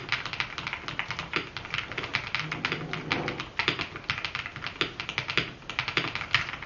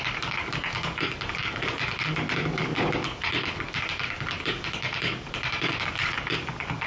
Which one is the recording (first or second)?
first